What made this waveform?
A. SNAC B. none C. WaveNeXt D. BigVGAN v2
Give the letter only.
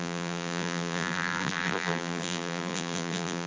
D